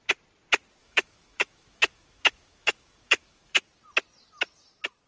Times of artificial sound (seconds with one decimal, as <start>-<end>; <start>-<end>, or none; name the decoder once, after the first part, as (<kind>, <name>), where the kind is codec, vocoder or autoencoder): 0.8-3.6 (autoencoder, DAC-VAE)